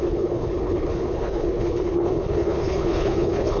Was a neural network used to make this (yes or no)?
yes